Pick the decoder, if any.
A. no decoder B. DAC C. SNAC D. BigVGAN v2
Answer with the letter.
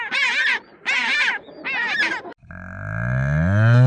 A